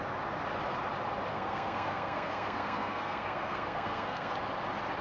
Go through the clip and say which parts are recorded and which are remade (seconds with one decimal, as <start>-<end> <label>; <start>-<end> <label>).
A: 0.0-1.3 recorded; 1.3-4.3 remade; 4.3-5.0 recorded